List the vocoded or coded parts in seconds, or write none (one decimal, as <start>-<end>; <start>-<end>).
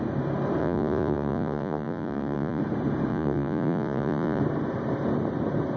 0.6-2.6; 3.1-4.4